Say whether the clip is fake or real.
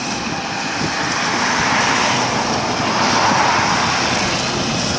real